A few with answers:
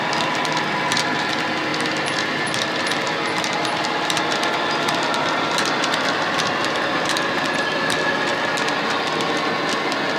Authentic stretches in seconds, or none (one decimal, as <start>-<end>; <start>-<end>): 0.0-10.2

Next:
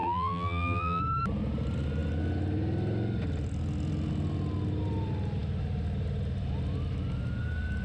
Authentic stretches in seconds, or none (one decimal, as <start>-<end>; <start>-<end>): 1.0-7.8

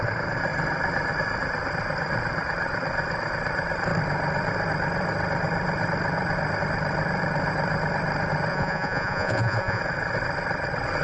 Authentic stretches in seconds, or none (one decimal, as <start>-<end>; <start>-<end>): 0.0-8.5; 9.8-11.0